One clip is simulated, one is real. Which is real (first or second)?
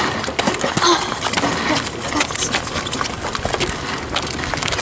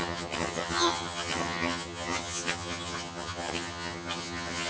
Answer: first